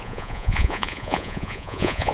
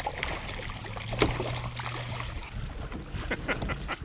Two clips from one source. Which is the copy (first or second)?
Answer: first